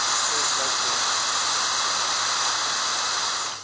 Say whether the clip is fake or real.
real